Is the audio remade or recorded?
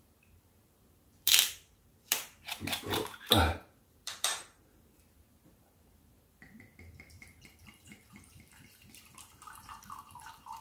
remade